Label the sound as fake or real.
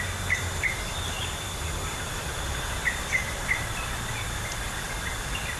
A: fake